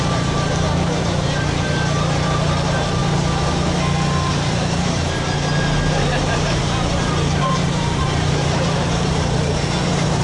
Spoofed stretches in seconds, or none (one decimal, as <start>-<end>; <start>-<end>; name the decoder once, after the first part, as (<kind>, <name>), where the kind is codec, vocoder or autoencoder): 0.0-3.0 (vocoder, BigVGAN v2); 4.3-10.2